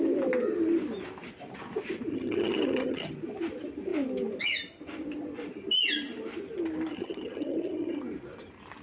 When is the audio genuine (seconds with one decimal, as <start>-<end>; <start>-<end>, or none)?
0.0-2.1; 3.1-6.9; 8.0-8.8